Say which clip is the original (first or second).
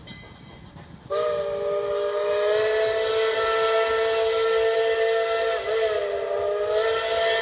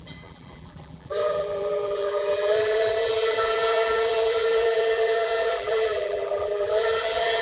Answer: first